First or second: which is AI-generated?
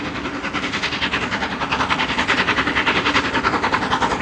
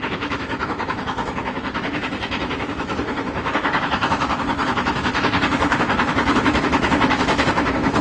second